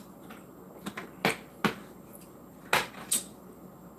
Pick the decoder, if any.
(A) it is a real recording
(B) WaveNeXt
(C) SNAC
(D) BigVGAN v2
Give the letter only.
A